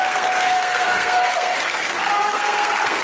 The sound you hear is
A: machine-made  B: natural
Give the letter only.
A